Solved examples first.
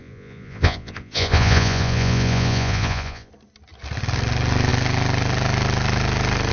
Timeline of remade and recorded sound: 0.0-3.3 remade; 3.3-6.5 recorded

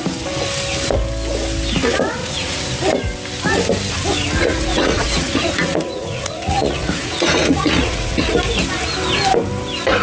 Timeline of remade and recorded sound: 0.0-2.2 recorded; 2.2-2.7 remade; 2.7-4.4 recorded; 4.4-8.3 remade; 8.3-10.0 recorded

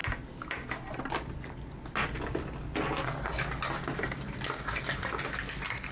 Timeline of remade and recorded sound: 0.0-5.9 recorded

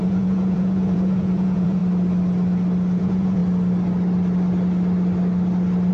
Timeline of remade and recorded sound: 0.0-1.8 remade; 1.8-3.0 recorded; 3.0-3.4 remade; 3.4-5.9 recorded

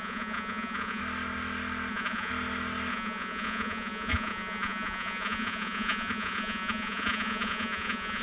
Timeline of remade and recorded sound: 0.0-1.0 remade; 1.0-1.9 recorded; 1.9-2.3 remade; 2.3-2.9 recorded; 2.9-8.2 remade

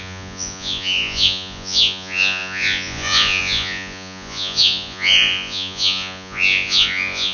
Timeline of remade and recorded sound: 0.0-7.3 remade